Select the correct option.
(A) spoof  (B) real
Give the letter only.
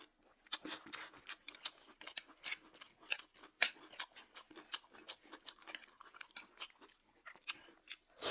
B